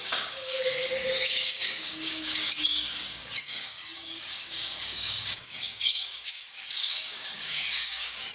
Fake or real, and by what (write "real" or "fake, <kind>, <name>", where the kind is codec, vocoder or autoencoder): fake, codec, DAC